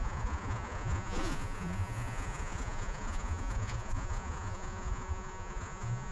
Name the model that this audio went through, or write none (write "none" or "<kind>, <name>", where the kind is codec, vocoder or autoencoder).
vocoder, Vocos